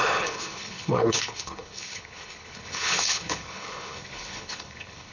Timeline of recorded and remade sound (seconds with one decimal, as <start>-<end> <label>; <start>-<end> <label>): 0.0-5.1 remade